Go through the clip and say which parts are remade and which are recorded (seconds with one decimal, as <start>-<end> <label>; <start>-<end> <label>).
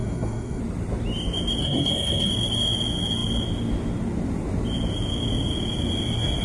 0.0-0.6 remade; 0.6-1.6 recorded; 1.6-2.3 remade; 2.3-6.4 recorded